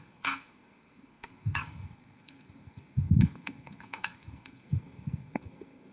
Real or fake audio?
fake